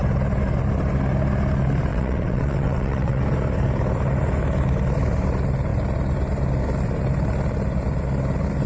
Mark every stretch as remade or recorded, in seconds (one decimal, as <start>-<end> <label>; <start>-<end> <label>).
0.0-1.9 recorded; 1.9-3.2 remade; 3.2-8.7 recorded